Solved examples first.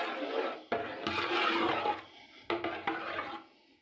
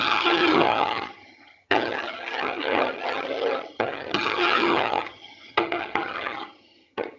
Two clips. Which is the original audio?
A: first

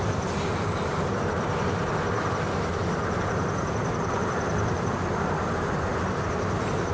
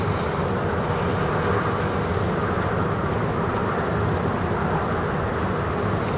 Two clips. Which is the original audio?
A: second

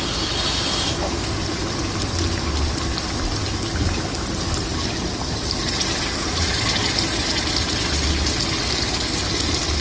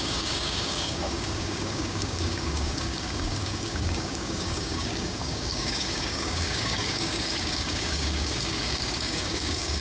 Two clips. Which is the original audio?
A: first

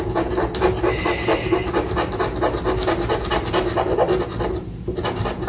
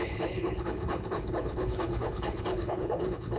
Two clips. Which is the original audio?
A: first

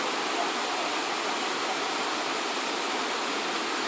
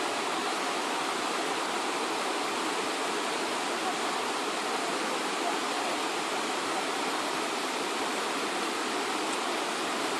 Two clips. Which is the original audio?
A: first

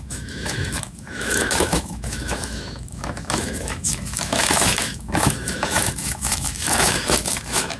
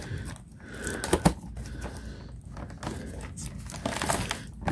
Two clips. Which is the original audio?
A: second